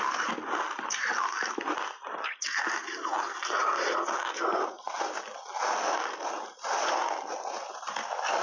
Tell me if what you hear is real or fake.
real